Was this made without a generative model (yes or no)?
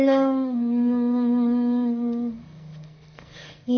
no